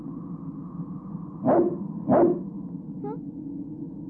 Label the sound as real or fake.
real